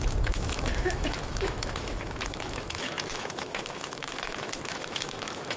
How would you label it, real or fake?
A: fake